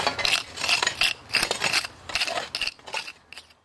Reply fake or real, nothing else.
real